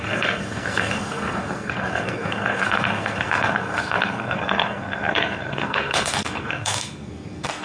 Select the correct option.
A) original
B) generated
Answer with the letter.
B